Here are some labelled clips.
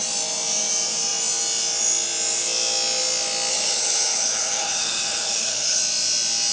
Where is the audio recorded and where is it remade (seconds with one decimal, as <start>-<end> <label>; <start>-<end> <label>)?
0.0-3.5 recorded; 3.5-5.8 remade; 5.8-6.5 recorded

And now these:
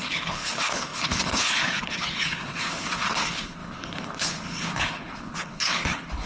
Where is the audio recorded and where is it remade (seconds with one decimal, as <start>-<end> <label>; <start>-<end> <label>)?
0.0-6.3 remade

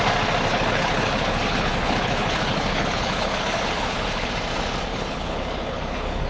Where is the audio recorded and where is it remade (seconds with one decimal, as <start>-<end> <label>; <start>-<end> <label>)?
0.0-0.5 recorded; 0.5-4.3 remade; 4.3-4.9 recorded; 4.9-6.3 remade

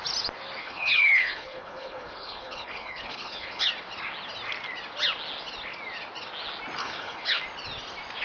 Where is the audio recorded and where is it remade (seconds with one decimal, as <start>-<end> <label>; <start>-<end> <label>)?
0.0-0.6 recorded; 0.6-3.7 remade; 3.7-6.8 recorded; 6.8-7.4 remade; 7.4-8.2 recorded

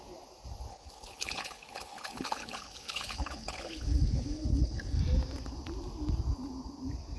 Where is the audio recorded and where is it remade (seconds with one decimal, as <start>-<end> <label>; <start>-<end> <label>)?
0.0-0.7 recorded; 0.7-5.0 remade; 5.0-7.2 recorded